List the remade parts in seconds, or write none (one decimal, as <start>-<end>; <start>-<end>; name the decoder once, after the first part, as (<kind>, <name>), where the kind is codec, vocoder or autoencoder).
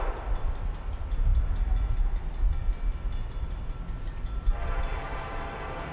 none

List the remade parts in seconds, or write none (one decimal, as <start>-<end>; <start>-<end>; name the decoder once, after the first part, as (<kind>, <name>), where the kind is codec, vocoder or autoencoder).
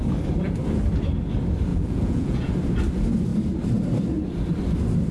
1.7-2.5 (vocoder, Vocos)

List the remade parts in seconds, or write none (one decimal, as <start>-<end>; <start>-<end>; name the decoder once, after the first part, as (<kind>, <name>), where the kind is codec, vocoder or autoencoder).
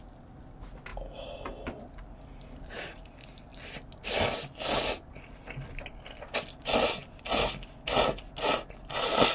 none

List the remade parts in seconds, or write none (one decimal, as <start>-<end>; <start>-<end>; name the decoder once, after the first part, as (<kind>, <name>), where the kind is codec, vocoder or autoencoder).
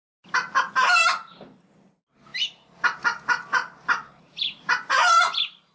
none